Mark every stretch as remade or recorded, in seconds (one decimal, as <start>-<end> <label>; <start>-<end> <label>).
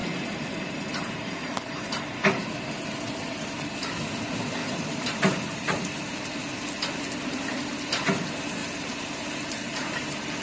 0.0-1.8 remade; 1.8-4.6 recorded; 4.6-6.3 remade; 6.3-8.6 recorded; 8.6-10.4 remade